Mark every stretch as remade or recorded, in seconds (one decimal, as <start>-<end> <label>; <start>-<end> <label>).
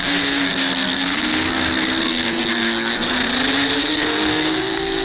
0.0-3.1 remade; 3.1-3.8 recorded; 3.8-5.0 remade